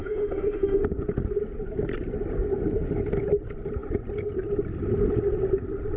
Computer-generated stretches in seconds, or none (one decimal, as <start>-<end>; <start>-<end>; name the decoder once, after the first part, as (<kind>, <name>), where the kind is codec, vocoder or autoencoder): 0.0-0.8 (autoencoder, DAC-VAE)